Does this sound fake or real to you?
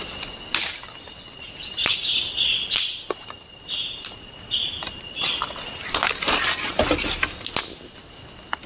real